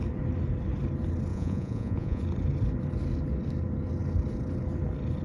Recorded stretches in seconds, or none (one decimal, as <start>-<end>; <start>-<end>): 0.0-1.3; 2.2-5.2